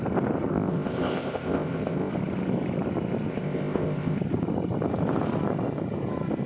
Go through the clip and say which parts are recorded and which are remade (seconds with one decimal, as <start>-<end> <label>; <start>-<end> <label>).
0.0-0.5 recorded; 0.5-2.1 remade; 2.1-3.3 recorded; 3.3-4.2 remade; 4.2-6.5 recorded